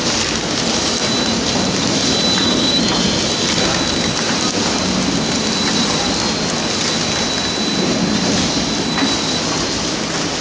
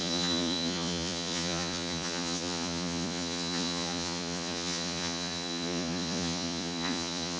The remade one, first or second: second